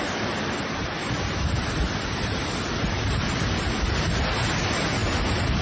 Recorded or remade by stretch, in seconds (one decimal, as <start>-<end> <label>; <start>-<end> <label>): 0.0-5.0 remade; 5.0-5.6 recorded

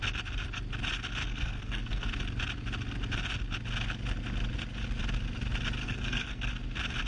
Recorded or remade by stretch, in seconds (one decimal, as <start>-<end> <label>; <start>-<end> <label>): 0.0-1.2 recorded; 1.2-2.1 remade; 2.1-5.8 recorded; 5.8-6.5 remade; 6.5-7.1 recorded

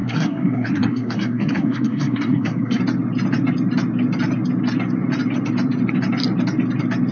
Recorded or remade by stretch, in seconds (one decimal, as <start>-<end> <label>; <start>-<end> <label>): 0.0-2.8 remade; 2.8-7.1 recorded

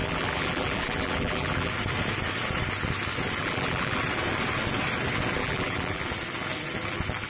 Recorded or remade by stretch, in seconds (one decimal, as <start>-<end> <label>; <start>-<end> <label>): 0.0-1.7 remade; 1.7-3.4 recorded; 3.4-4.0 remade; 4.0-5.4 recorded; 5.4-6.0 remade; 6.0-7.3 recorded

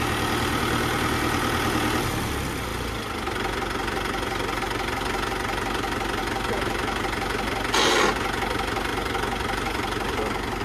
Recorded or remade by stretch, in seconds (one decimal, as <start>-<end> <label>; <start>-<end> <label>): 0.0-10.6 recorded

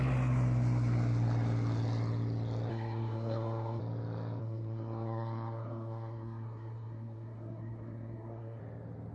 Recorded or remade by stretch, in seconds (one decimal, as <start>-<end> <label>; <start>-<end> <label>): 0.0-2.7 recorded; 2.7-3.8 remade; 3.8-4.4 recorded; 4.4-8.6 remade; 8.6-9.1 recorded

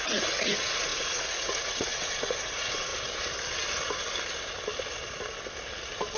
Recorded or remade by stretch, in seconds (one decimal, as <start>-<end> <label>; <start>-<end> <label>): 0.0-2.9 remade; 2.9-6.2 recorded

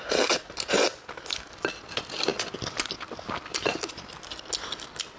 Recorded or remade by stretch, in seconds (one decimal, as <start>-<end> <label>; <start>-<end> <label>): 0.0-5.2 recorded